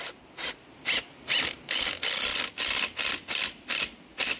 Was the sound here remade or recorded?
recorded